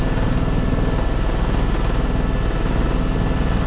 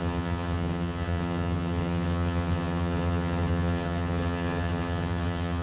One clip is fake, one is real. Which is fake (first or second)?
second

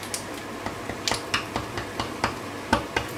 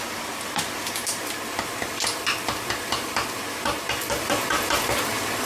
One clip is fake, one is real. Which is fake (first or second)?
second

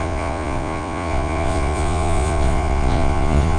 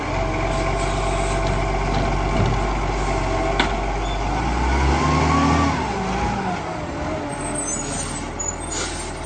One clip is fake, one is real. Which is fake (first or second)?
first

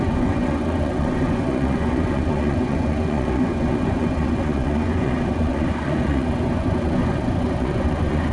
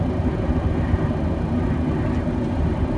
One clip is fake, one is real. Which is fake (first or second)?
first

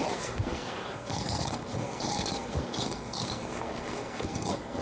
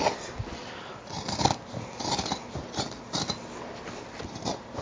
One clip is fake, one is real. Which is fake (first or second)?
first